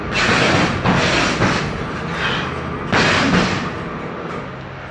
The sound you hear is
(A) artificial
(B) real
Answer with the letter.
B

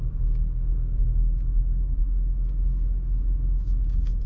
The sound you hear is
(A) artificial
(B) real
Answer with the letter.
A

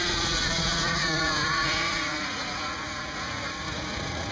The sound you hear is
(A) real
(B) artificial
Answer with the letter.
B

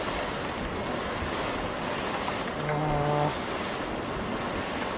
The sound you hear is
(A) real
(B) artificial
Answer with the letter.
A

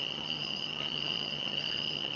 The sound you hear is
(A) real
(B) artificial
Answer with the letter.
B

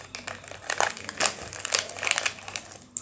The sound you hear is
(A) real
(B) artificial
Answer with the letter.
A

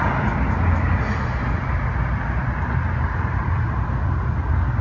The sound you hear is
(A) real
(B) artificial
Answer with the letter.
A